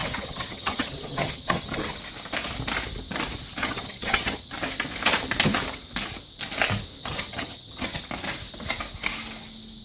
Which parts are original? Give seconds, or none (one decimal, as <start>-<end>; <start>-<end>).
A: 2.0-3.6; 4.5-7.0; 8.0-9.8